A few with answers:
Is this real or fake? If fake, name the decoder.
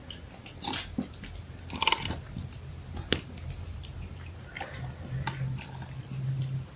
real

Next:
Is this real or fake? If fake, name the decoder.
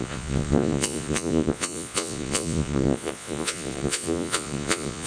fake, vocoder, Vocos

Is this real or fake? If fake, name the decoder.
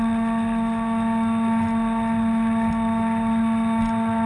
real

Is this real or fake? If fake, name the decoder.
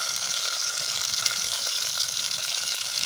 fake, codec, DAC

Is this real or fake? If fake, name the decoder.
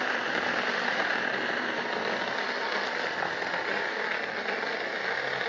real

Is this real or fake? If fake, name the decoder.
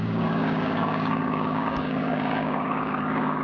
fake, codec, DAC